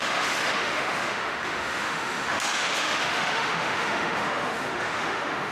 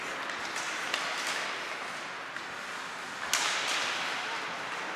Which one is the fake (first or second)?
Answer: first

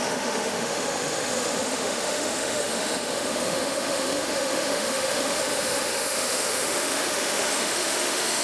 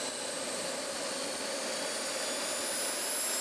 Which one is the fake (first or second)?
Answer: first